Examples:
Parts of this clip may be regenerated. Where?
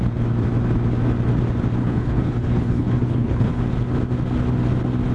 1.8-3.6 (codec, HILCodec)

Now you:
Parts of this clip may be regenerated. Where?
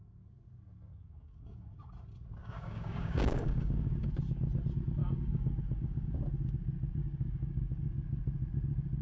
0.9-1.7 (codec, DAC); 2.4-4.1; 5.0-6.1; 7.0-7.9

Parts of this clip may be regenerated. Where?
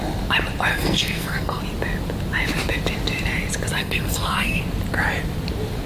0.7-1.6 (codec, SNAC); 3.8-4.6